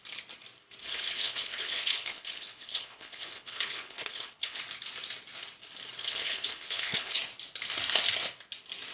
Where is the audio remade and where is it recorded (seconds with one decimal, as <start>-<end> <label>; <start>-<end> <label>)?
0.0-0.9 recorded; 0.9-4.6 remade; 4.6-6.0 recorded; 6.0-7.2 remade; 7.2-8.9 recorded